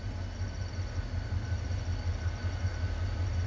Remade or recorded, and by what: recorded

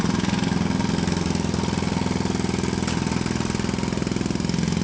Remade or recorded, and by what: recorded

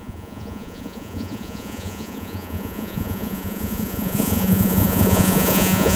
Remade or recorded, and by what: remade, vocoder, Vocos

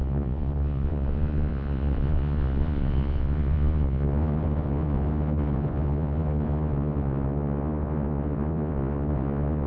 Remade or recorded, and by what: remade, vocoder, Vocos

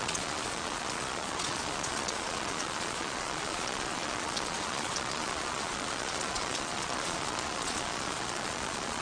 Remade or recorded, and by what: remade, vocoder, Vocos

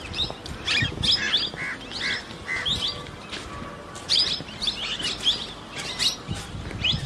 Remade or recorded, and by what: recorded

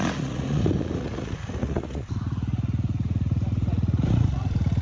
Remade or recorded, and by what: remade, vocoder, Vocos